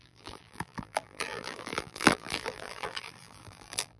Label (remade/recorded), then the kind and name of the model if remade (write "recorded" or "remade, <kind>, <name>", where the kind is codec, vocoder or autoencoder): remade, vocoder, BigVGAN v2